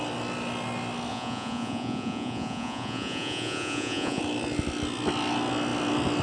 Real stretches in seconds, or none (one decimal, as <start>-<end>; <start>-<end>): 0.0-1.1; 4.2-6.2